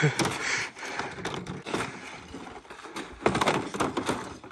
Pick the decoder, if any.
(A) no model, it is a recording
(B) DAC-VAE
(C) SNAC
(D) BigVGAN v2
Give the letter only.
A